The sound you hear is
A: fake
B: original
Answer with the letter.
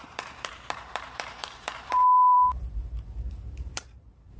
A